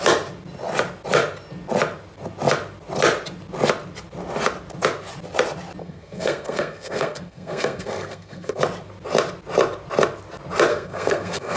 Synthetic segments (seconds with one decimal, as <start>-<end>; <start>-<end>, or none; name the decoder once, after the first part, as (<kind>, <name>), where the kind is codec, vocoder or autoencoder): 5.8-8.6 (codec, SNAC); 10.7-11.6